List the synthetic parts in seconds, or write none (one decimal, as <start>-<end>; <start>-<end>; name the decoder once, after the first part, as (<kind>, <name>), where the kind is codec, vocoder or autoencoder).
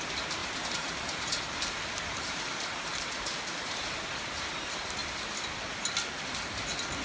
0.4-4.5 (vocoder, BigVGAN v2)